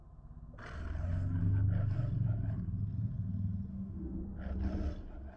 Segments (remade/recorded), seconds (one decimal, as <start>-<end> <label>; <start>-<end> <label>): 0.0-3.7 recorded; 3.7-4.2 remade; 4.2-5.4 recorded